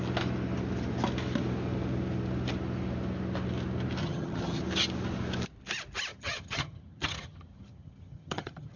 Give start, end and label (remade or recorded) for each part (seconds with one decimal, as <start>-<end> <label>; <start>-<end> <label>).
0.0-4.0 recorded; 4.0-4.6 remade; 4.6-6.1 recorded; 6.1-8.8 remade